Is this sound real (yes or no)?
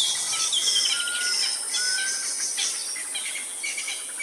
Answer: yes